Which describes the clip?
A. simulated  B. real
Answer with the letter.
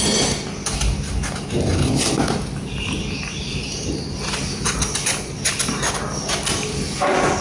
B